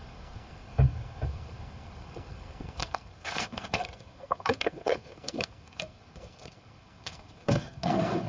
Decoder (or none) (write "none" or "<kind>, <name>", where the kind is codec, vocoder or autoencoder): codec, SNAC